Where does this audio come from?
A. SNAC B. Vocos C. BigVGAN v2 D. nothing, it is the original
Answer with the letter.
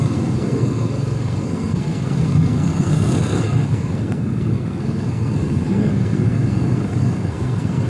A